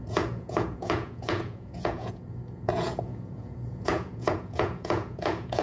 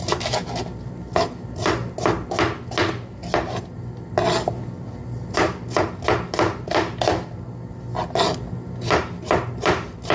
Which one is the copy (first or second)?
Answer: first